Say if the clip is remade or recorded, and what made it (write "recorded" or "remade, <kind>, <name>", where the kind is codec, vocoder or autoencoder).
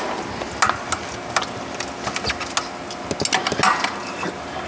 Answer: recorded